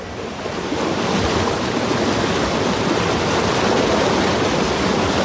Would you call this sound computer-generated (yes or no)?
no